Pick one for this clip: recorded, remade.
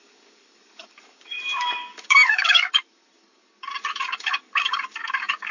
remade